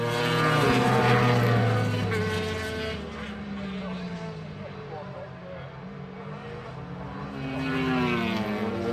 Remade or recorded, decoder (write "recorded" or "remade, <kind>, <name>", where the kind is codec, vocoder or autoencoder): recorded